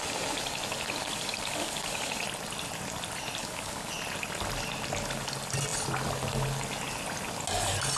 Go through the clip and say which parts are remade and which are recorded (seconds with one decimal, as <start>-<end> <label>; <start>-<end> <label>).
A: 0.0-1.0 recorded; 1.0-2.1 remade; 2.1-3.4 recorded; 3.4-3.9 remade; 3.9-8.0 recorded